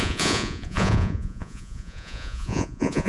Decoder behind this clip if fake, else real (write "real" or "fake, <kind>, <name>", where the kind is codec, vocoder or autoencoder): fake, vocoder, Vocos